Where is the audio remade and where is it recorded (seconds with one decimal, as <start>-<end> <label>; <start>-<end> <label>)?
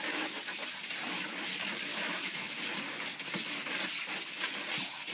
0.0-1.9 recorded; 1.9-2.6 remade; 2.6-5.1 recorded